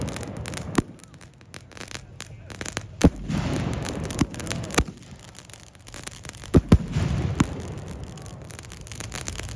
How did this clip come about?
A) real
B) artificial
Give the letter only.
A